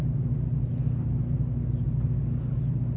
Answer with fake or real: real